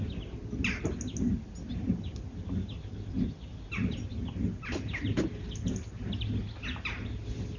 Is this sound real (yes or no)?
yes